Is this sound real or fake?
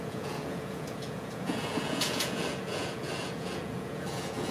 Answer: fake